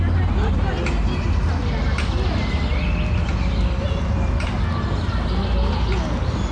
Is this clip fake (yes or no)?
no